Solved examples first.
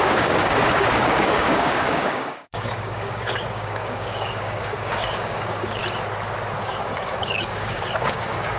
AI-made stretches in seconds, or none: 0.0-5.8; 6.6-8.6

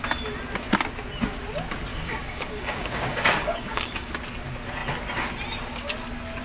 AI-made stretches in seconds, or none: 1.9-4.1

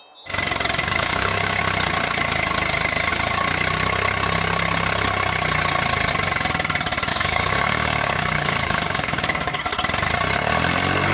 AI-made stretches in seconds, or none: 0.8-1.6; 7.1-9.6

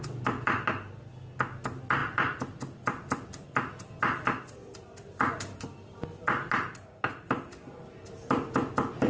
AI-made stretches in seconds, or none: none

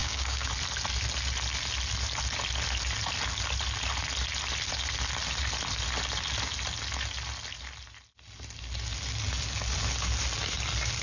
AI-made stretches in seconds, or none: 0.0-0.5